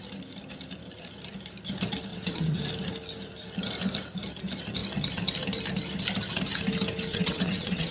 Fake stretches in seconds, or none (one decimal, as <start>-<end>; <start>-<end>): 2.1-2.6; 7.1-7.9